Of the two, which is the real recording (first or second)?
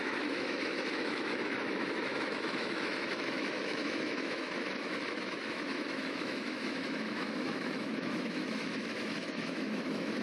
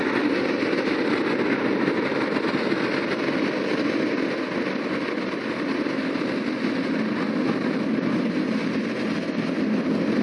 second